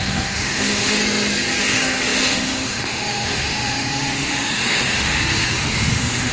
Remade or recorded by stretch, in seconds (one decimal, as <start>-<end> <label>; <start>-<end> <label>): 0.0-1.0 remade; 1.0-1.6 recorded; 1.6-6.3 remade